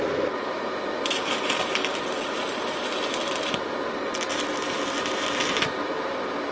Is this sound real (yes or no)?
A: yes